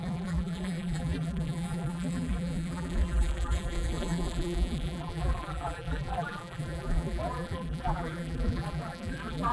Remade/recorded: remade